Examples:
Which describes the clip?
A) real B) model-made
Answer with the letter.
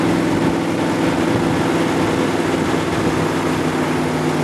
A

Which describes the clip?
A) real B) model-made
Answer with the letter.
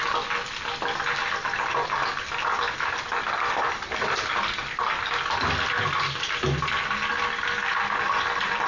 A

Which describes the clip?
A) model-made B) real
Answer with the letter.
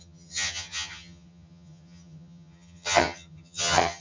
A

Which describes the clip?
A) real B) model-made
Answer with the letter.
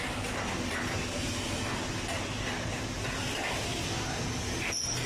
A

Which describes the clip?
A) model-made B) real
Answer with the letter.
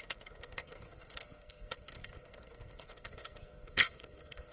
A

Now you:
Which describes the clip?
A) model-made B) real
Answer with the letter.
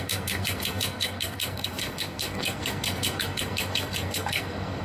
A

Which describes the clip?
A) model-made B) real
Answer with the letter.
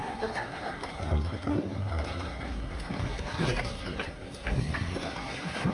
A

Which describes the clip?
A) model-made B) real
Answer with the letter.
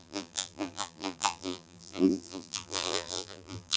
A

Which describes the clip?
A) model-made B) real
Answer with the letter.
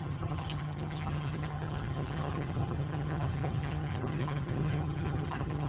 A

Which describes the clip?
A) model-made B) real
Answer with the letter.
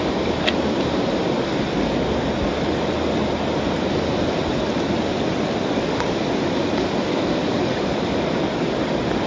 B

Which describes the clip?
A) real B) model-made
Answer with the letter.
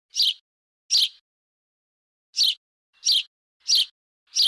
A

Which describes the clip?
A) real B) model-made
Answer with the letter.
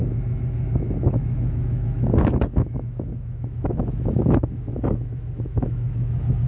B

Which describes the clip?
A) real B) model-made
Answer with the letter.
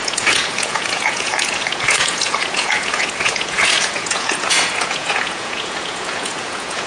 B